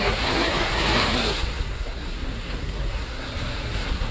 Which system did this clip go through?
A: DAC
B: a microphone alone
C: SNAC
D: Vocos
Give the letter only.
C